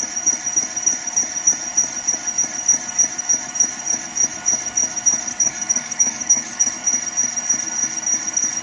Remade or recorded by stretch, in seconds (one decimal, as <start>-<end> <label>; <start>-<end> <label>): 0.0-5.3 recorded; 5.3-6.7 remade; 6.7-8.6 recorded